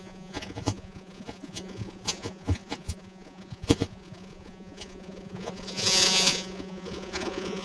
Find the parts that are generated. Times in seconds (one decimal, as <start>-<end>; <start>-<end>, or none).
0.0-7.6